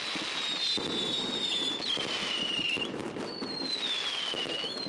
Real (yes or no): yes